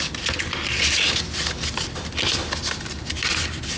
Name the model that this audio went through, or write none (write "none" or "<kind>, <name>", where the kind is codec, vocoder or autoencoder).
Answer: none